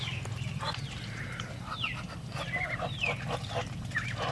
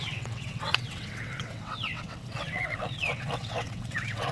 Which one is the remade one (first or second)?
second